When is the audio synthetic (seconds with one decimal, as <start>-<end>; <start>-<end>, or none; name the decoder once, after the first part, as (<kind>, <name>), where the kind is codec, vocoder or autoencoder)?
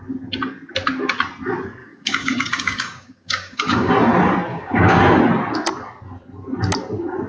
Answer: 1.8-3.9 (codec, DAC); 4.5-5.0